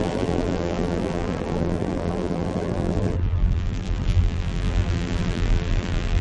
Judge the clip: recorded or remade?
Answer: remade